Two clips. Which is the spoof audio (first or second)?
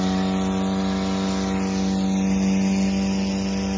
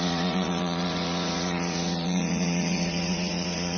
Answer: second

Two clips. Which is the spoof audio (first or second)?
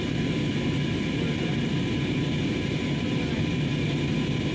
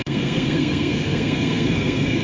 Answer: second